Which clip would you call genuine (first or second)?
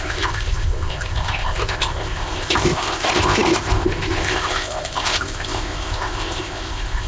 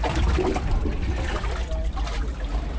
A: second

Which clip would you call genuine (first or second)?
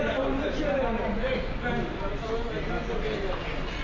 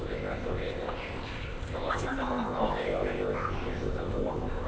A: first